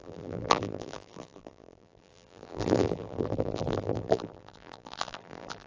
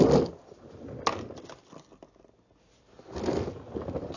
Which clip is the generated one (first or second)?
first